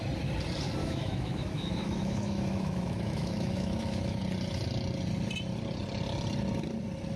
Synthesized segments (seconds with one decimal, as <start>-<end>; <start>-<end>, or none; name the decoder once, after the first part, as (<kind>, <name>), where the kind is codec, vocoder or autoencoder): 0.8-4.2 (autoencoder, DAC-VAE)

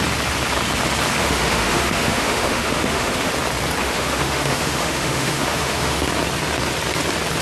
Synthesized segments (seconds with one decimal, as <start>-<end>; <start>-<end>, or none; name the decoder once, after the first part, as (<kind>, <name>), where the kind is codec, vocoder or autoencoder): 1.2-3.3 (autoencoder, DAC-VAE); 3.8-6.1

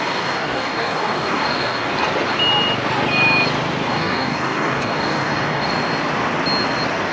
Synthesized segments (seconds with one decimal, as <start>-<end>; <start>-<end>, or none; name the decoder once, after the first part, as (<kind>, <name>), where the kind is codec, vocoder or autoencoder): 0.0-1.9 (codec, DAC); 3.9-5.7

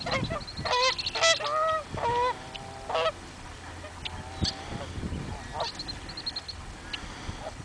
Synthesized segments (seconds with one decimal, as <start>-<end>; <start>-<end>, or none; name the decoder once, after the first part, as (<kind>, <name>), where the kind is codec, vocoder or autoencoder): none